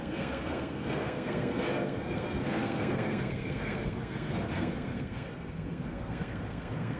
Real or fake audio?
fake